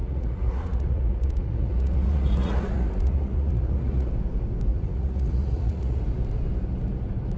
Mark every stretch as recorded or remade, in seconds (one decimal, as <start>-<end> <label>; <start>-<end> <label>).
0.0-4.1 remade; 4.1-4.7 recorded; 4.7-6.0 remade; 6.0-7.4 recorded